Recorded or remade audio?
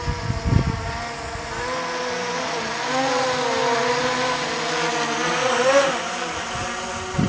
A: recorded